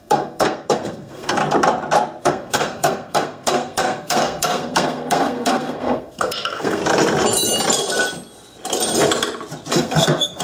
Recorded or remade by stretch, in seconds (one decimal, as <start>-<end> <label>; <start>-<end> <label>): 0.0-1.4 remade; 1.4-2.2 recorded; 2.2-6.8 remade; 6.8-9.7 recorded; 9.7-10.4 remade